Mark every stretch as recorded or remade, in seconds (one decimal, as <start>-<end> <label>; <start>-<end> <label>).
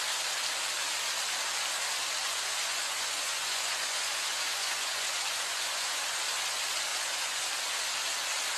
0.0-2.2 recorded; 2.2-6.2 remade; 6.2-6.9 recorded; 6.9-7.5 remade; 7.5-8.6 recorded